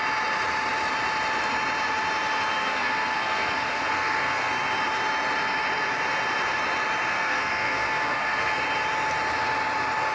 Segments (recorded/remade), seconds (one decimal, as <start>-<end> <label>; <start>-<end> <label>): 0.0-2.5 recorded; 2.5-4.5 remade; 4.5-7.1 recorded; 7.1-8.6 remade; 8.6-10.1 recorded